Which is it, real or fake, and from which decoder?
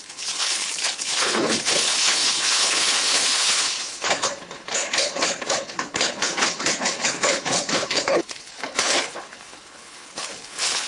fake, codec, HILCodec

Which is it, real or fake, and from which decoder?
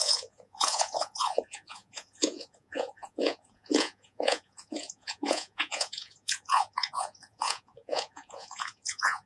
fake, vocoder, Vocos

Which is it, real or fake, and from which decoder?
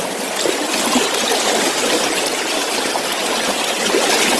real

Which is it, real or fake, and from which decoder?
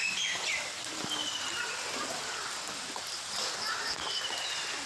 real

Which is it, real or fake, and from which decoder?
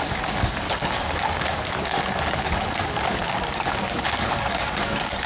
fake, codec, DAC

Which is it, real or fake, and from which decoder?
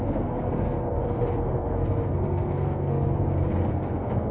fake, codec, SNAC